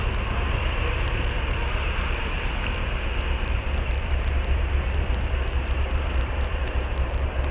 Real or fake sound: fake